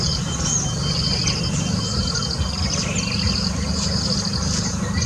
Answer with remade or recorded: recorded